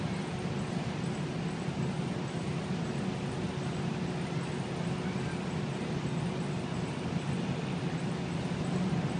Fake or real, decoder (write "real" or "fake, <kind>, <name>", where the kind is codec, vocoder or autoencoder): real